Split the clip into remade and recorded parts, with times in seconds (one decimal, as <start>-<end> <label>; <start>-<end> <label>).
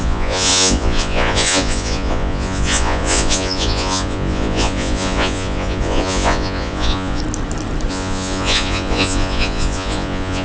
0.0-7.2 remade; 7.2-7.9 recorded; 7.9-10.4 remade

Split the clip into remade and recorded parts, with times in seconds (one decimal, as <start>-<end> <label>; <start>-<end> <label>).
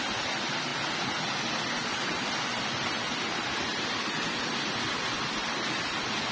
0.0-6.3 recorded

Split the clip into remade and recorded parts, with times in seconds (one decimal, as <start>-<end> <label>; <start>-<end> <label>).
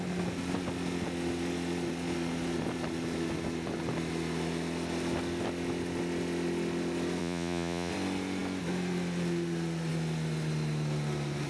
0.0-7.2 recorded; 7.2-7.9 remade; 7.9-11.5 recorded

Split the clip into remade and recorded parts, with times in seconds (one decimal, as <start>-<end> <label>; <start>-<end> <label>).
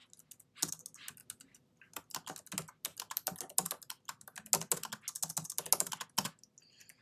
0.0-7.0 recorded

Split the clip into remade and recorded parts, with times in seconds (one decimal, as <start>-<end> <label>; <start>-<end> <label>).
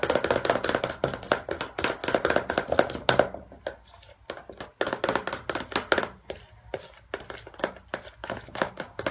0.0-8.2 recorded; 8.2-8.7 remade; 8.7-9.1 recorded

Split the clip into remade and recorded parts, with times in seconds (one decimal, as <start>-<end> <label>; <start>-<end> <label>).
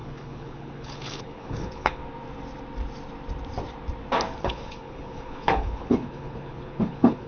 0.0-2.0 remade; 2.0-4.4 recorded; 4.4-7.3 remade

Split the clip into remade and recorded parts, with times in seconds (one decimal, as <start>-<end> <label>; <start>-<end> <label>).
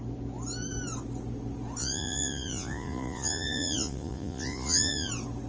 0.0-1.8 recorded; 1.8-5.1 remade; 5.1-5.5 recorded